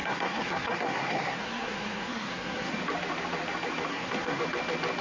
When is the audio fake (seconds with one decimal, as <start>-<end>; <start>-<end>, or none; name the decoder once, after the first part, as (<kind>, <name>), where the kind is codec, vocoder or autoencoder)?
0.0-2.7 (codec, SNAC); 3.9-4.4